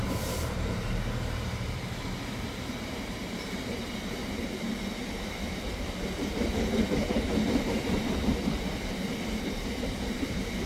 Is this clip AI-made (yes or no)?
yes